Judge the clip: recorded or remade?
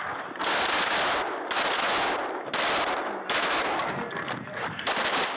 recorded